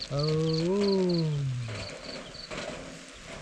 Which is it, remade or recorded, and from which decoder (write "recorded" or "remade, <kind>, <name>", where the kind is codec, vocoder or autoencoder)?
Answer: recorded